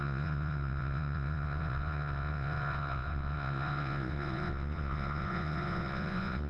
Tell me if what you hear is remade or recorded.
remade